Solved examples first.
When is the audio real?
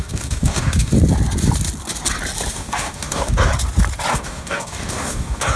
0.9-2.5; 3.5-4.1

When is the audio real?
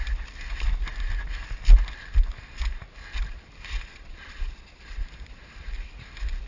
0.0-3.9; 5.0-6.5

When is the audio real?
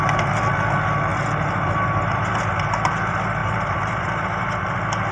0.0-3.4; 4.0-5.1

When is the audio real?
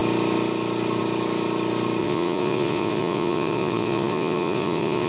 0.0-2.0